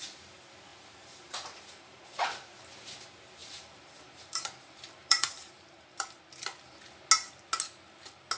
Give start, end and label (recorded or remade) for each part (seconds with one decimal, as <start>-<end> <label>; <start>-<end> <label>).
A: 0.0-0.7 recorded; 0.7-2.7 remade; 2.7-3.4 recorded; 3.4-6.2 remade; 6.2-8.4 recorded